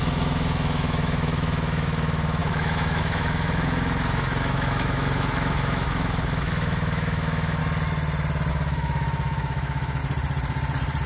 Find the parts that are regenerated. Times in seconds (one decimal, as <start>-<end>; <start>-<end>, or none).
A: 0.0-7.6; 8.5-10.0

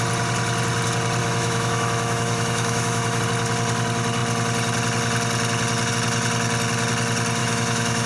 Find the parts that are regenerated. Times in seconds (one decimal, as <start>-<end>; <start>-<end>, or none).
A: 1.2-3.2; 7.4-8.1

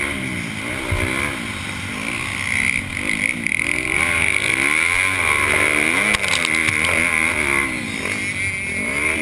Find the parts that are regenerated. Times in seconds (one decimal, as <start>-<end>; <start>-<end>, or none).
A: none

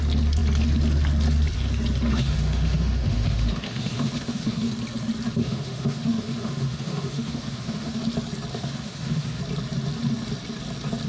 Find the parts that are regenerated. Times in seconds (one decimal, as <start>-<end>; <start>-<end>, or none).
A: 2.1-4.7; 5.4-8.0; 8.5-9.4

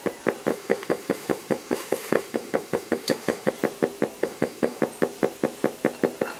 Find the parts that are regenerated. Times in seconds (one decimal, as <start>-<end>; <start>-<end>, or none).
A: 0.5-3.5; 4.2-4.8

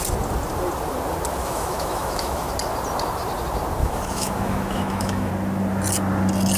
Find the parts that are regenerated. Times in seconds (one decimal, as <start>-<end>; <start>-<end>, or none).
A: 1.4-2.5; 3.8-5.3

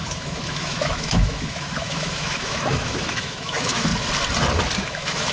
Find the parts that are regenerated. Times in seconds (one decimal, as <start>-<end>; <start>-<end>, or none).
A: 0.0-3.9; 4.8-5.3

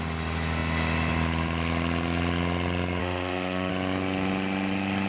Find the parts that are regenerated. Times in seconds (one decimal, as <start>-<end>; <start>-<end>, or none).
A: 3.0-3.7